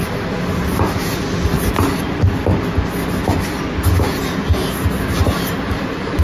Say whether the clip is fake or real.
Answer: real